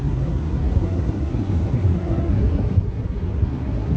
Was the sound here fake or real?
fake